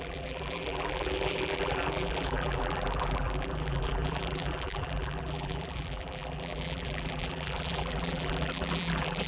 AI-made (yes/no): yes